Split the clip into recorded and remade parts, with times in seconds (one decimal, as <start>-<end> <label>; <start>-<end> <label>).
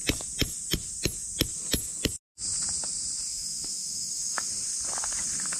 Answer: 0.0-3.3 recorded; 3.3-4.5 remade; 4.5-5.6 recorded